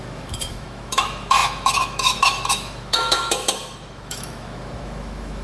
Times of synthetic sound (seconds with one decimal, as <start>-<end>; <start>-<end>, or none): 0.0-5.4